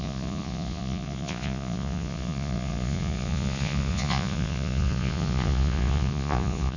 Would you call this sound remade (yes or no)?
yes